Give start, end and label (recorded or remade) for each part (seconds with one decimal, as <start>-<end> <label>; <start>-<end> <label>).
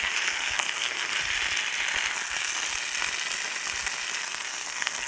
0.0-1.1 remade; 1.1-4.2 recorded; 4.2-5.1 remade